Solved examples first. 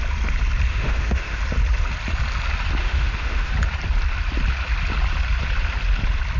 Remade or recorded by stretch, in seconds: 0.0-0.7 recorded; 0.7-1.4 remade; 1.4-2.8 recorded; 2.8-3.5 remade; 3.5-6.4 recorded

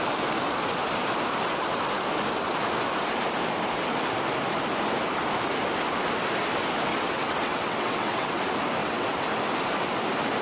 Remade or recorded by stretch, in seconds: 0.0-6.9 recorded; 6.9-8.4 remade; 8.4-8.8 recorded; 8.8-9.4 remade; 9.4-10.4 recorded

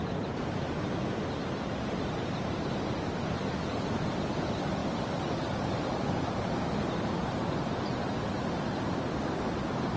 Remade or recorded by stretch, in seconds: 0.0-10.0 recorded

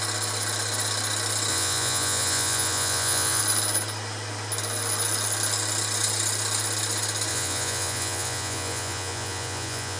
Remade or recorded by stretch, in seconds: 0.0-1.5 recorded; 1.5-3.4 remade; 3.4-7.3 recorded; 7.3-10.0 remade

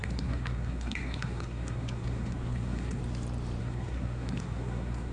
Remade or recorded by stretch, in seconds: 0.0-3.0 remade; 3.0-3.6 recorded; 3.6-5.1 remade

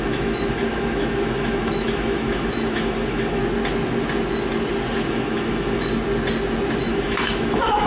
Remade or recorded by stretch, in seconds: 0.0-3.4 remade; 3.4-5.1 recorded; 5.1-5.9 remade; 5.9-6.8 recorded; 6.8-7.9 remade

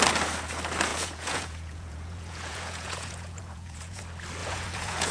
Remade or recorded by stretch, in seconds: 0.0-0.9 recorded; 0.9-4.0 remade; 4.0-4.4 recorded; 4.4-5.1 remade